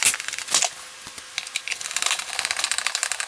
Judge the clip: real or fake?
real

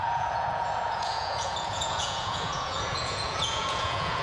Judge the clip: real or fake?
fake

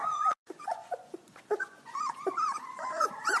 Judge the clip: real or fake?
fake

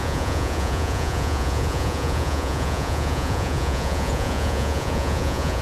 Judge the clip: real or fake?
fake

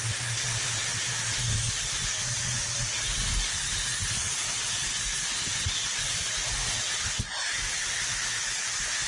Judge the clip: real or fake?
real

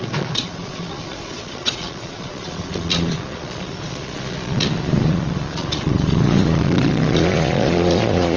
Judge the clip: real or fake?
fake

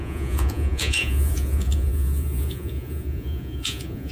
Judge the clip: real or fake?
fake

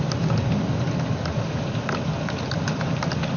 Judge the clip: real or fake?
real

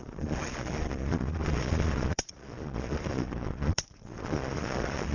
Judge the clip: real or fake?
fake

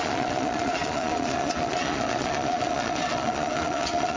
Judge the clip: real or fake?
fake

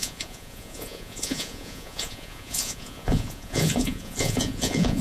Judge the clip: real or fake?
fake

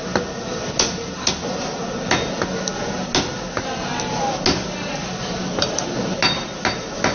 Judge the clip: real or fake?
real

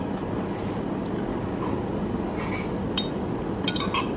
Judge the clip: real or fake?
real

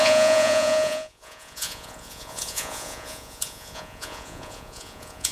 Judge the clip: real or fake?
fake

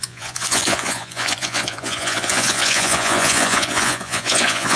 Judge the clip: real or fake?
fake